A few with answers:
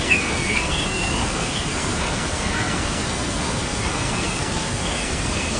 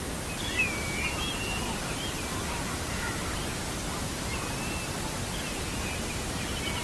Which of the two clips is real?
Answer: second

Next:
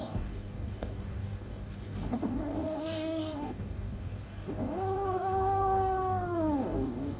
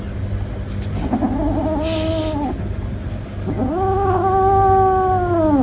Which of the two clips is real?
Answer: second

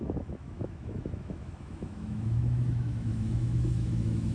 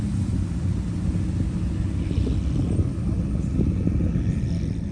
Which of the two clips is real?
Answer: second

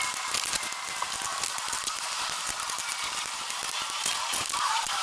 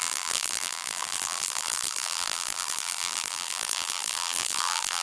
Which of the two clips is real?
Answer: first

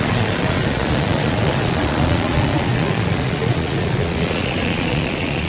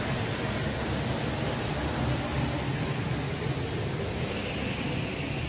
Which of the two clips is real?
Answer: second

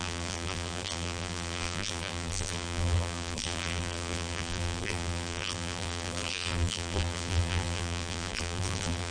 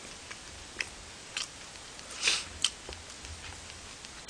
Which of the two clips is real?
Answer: second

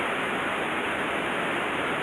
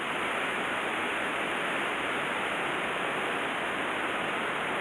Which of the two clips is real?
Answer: second